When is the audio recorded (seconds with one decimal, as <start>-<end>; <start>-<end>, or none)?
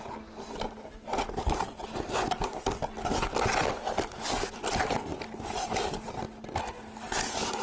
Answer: 0.0-7.6